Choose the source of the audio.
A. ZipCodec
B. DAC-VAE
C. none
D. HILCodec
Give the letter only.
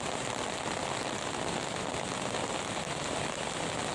C